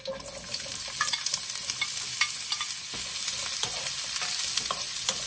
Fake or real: real